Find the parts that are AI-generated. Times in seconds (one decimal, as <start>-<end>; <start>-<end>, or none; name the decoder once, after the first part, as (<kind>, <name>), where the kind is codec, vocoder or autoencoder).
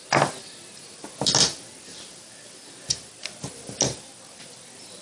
none